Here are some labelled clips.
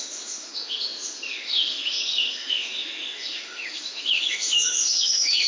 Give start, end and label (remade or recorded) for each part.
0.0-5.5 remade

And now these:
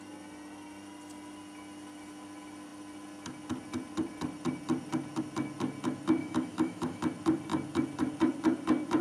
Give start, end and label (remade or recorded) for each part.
0.0-6.2 recorded; 6.2-7.0 remade; 7.0-9.0 recorded

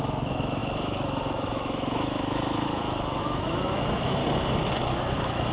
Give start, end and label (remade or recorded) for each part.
0.0-4.2 remade; 4.2-5.1 recorded; 5.1-5.5 remade

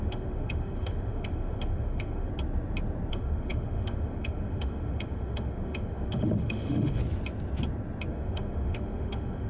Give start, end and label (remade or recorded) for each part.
0.0-2.3 remade; 2.3-3.1 recorded; 3.1-7.0 remade; 7.0-8.1 recorded; 8.1-9.5 remade

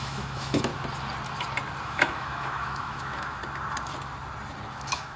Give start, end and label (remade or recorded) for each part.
0.0-0.7 remade; 0.7-1.8 recorded; 1.8-3.4 remade; 3.4-4.7 recorded; 4.7-5.2 remade